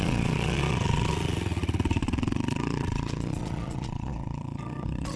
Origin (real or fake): fake